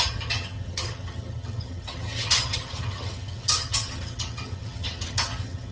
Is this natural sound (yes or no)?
no